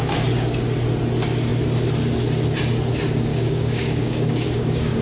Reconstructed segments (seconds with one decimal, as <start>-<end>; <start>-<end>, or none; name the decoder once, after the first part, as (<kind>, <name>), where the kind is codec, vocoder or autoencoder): 3.3-5.0 (codec, DAC)